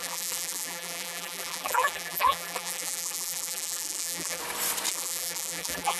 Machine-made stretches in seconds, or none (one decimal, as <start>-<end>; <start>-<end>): 0.0-4.4; 4.9-6.0